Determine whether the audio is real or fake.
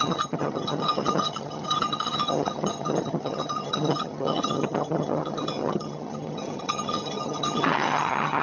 fake